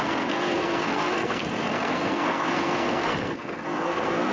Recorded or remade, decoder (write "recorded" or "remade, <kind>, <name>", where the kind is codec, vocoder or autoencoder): remade, codec, SNAC